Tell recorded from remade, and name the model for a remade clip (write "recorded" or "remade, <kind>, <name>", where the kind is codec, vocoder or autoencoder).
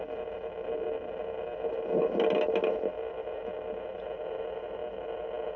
recorded